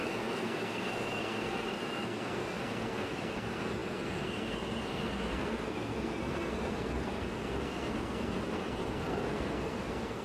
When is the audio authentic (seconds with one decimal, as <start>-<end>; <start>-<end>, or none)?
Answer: none